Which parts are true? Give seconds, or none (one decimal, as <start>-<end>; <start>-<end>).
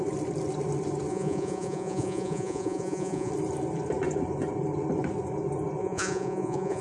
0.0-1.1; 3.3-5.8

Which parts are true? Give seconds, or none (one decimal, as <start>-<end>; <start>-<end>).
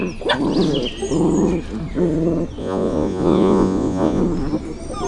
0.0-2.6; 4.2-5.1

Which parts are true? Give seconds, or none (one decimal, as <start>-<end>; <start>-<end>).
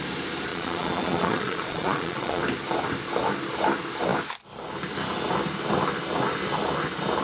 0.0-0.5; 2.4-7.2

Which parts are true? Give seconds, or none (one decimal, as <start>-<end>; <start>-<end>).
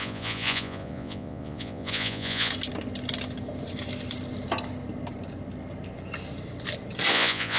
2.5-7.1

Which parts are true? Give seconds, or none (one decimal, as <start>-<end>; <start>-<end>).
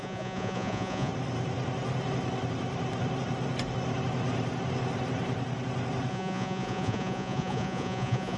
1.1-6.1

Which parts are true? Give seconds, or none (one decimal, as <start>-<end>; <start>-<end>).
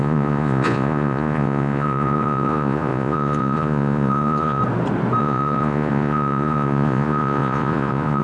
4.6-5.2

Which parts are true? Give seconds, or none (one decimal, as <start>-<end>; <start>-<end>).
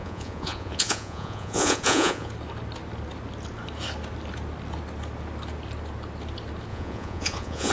2.3-6.7